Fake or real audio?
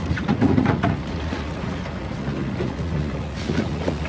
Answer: fake